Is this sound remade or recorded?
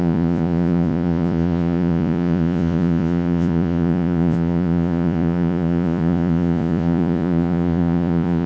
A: remade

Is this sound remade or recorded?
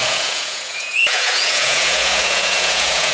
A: remade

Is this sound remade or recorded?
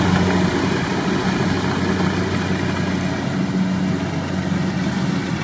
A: recorded